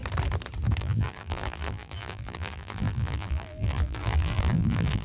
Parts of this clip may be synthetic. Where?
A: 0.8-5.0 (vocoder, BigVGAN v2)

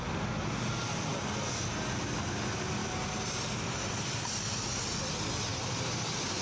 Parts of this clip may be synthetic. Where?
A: 2.8-4.1 (vocoder, BigVGAN v2)

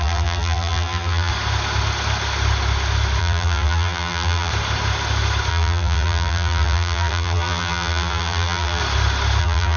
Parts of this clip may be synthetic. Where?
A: 0.0-1.3 (vocoder, BigVGAN v2); 3.2-4.5; 5.5-8.8; 9.4-9.8

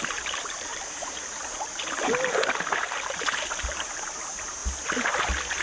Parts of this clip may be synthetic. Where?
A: 0.0-4.6 (vocoder, BigVGAN v2)